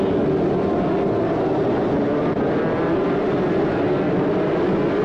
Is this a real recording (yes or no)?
yes